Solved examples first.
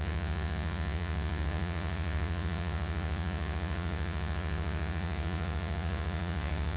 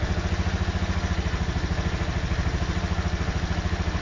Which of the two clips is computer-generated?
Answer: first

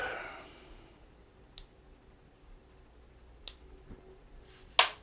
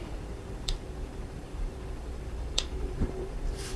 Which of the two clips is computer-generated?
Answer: second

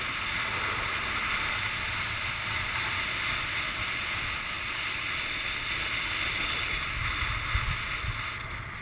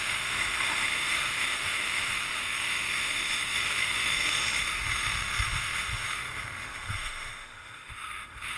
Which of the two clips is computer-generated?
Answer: second